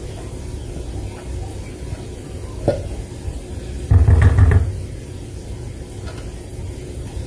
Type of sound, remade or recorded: recorded